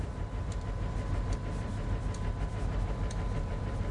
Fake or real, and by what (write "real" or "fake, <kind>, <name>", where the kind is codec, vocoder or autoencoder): fake, vocoder, BigVGAN v2